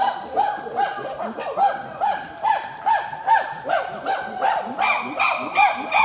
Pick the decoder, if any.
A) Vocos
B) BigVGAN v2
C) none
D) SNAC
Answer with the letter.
C